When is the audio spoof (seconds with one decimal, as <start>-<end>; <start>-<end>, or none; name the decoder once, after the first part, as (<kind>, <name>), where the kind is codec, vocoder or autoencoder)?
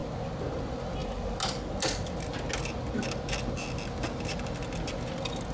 none